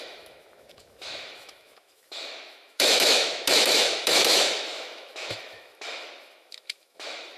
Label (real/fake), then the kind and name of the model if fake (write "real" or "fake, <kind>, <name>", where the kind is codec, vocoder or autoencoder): fake, autoencoder, DAC-VAE